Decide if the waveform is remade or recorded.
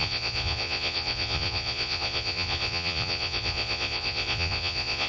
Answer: remade